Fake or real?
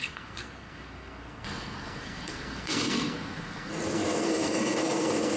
fake